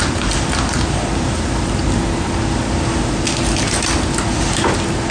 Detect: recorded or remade recorded